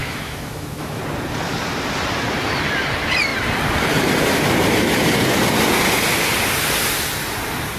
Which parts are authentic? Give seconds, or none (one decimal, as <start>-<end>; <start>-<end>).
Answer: 1.0-7.8